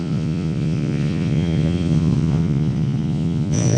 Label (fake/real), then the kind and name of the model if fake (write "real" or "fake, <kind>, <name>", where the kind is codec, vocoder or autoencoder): fake, vocoder, Vocos